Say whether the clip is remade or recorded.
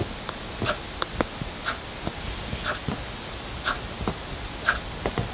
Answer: recorded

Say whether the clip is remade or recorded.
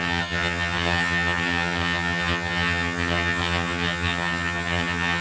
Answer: remade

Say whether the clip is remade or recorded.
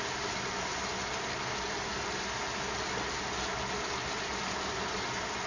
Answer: recorded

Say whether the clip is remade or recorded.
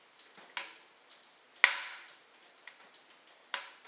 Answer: recorded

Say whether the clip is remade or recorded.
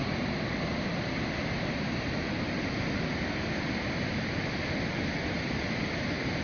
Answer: recorded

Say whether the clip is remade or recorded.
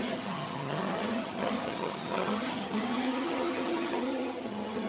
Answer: remade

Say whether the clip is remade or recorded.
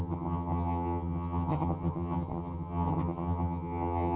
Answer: remade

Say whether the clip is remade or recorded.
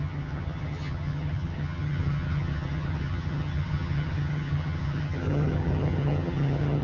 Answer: remade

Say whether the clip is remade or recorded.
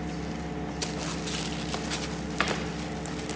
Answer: recorded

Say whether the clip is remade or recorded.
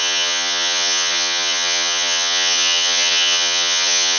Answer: remade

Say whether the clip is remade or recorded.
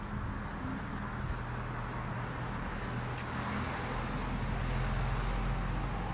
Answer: recorded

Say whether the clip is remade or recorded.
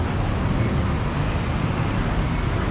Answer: recorded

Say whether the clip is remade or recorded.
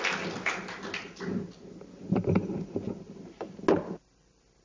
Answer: recorded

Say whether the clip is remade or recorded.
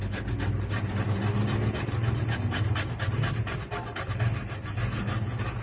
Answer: recorded